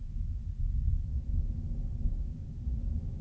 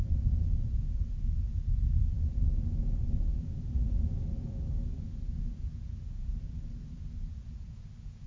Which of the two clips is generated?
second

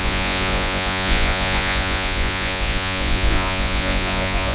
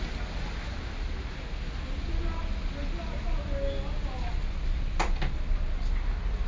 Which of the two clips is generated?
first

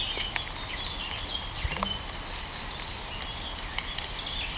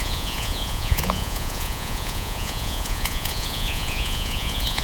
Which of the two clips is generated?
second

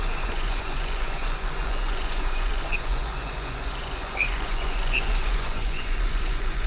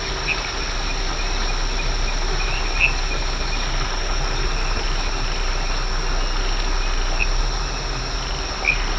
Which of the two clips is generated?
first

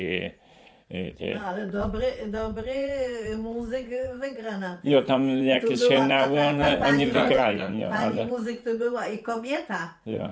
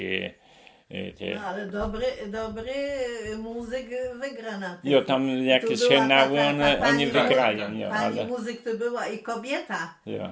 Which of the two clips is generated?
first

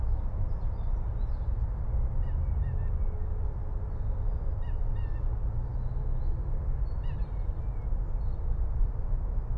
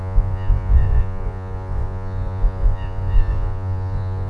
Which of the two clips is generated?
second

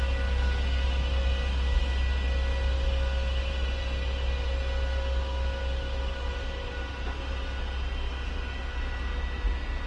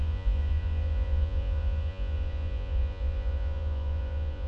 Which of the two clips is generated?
second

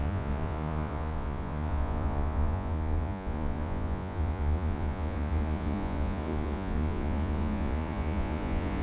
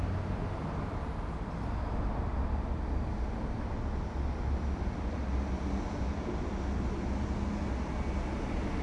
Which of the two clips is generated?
first